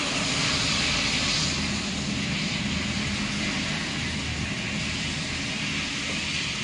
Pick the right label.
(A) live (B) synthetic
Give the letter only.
A